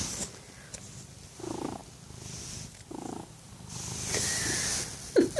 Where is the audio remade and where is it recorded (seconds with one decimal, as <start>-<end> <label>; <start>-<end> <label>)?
0.0-5.4 recorded